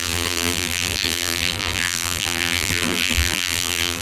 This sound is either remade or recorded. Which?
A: remade